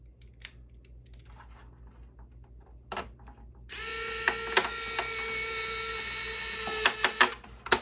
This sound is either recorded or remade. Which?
recorded